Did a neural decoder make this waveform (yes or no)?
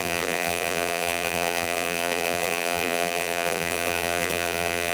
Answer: yes